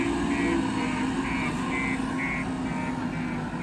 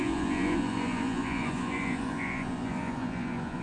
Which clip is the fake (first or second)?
second